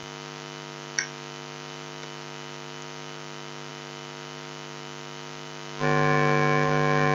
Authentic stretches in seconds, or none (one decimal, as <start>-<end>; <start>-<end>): 0.0-7.1